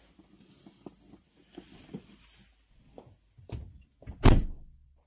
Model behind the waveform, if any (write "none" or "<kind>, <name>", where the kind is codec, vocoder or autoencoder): none